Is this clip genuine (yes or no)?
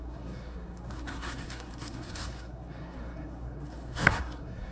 no